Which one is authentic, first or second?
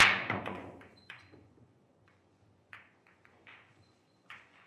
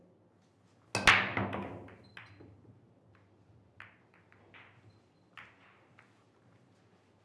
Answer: second